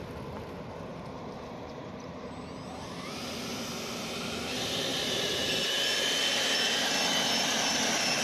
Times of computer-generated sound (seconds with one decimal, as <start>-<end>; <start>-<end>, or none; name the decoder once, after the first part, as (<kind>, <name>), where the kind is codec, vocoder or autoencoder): 0.9-2.4 (vocoder, BigVGAN v2); 4.9-5.7